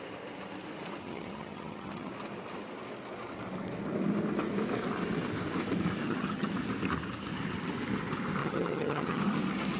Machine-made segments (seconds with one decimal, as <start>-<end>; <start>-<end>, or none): 1.0-2.1; 6.0-6.5; 8.4-9.2